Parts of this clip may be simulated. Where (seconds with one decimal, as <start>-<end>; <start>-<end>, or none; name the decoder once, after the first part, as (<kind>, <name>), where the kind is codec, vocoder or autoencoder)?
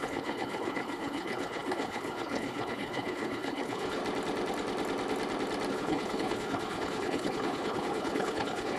0.0-4.0 (codec, HILCodec); 5.7-8.8